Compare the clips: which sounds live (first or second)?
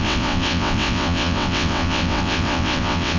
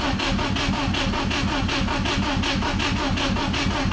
second